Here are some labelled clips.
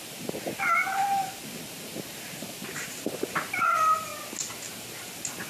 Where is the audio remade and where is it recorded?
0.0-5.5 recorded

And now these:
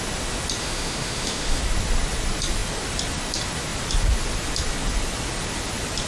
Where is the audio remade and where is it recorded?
0.0-0.6 recorded; 0.6-1.6 remade; 1.6-6.1 recorded

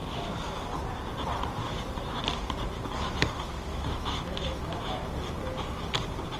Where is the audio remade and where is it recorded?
0.0-3.7 recorded; 3.7-4.8 remade; 4.8-6.4 recorded

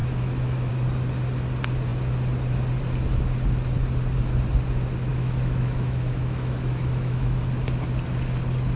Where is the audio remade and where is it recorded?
0.0-0.7 remade; 0.7-5.1 recorded; 5.1-7.4 remade; 7.4-8.8 recorded

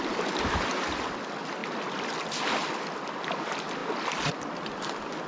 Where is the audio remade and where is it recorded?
0.0-5.3 recorded

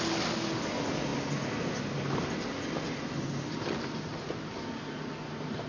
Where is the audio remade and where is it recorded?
0.0-5.7 recorded

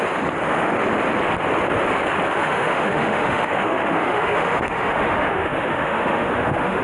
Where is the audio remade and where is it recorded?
0.0-2.4 recorded; 2.4-6.8 remade

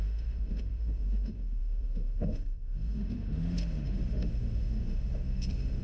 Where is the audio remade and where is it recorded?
0.0-5.8 remade